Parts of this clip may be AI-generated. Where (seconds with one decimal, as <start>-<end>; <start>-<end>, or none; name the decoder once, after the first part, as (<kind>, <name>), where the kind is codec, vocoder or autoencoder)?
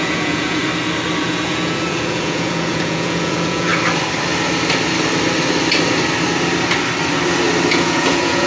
0.0-0.6 (vocoder, Vocos); 1.2-3.7; 7.7-8.5